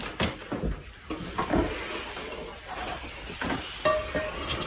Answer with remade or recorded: recorded